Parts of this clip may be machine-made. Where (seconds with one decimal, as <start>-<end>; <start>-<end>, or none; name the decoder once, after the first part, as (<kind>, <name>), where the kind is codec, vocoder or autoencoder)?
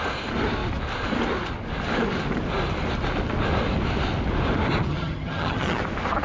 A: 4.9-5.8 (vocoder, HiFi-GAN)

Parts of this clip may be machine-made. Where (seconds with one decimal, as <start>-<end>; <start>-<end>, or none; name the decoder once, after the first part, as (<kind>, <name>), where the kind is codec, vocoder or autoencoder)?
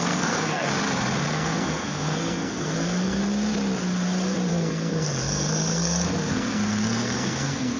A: 0.0-0.7 (codec, SNAC); 1.3-3.2; 4.5-7.8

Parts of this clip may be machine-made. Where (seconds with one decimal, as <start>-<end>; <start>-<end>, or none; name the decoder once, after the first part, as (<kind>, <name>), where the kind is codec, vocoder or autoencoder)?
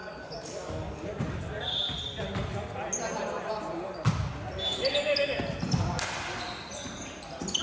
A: 0.0-1.2 (codec, DAC)